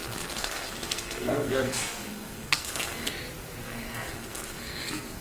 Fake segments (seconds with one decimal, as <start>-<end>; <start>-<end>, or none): 0.0-3.1; 3.6-5.2